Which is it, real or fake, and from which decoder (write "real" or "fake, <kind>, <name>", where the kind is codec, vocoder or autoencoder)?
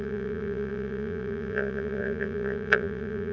fake, vocoder, Vocos